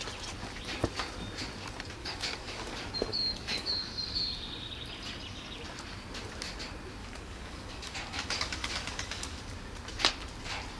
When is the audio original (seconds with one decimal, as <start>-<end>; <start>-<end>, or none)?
0.0-2.0; 2.7-3.1; 3.7-7.0; 9.4-10.8